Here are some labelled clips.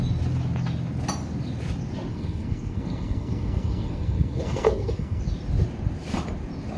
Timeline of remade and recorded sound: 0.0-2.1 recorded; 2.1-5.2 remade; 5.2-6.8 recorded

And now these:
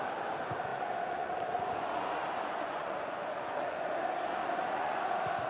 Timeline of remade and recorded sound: 0.0-0.7 recorded; 0.7-4.0 remade; 4.0-4.4 recorded; 4.4-5.0 remade; 5.0-5.5 recorded

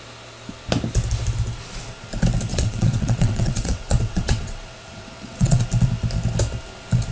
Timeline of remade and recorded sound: 0.0-2.5 recorded; 2.5-5.6 remade; 5.6-7.1 recorded

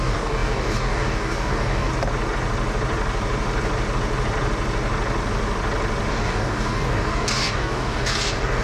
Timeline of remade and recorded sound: 0.0-1.9 remade; 1.9-6.1 recorded; 6.1-8.6 remade